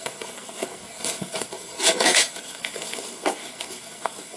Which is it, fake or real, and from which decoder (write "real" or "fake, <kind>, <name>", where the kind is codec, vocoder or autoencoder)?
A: fake, codec, SNAC